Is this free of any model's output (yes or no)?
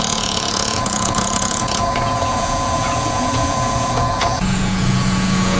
no